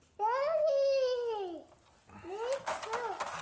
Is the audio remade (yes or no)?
no